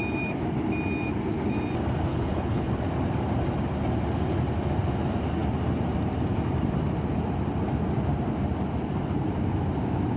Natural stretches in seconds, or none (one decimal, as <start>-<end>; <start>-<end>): 0.0-2.1; 2.7-10.2